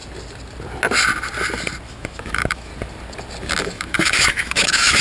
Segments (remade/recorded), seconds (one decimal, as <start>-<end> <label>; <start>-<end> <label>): 0.0-1.9 recorded; 1.9-2.7 remade; 2.7-3.6 recorded; 3.6-5.0 remade